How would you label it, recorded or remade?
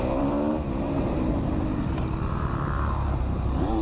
remade